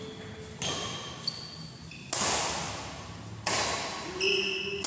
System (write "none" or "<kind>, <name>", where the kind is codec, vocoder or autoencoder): none